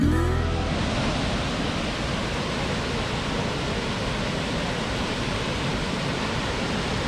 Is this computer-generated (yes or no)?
no